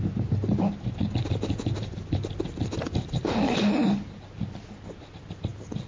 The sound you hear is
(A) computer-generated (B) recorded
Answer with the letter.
B